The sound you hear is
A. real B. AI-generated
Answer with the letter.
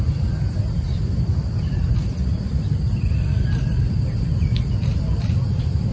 B